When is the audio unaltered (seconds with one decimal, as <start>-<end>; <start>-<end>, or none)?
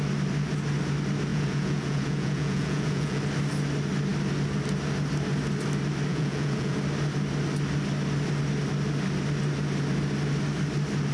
0.0-1.3; 3.2-6.1; 6.8-11.1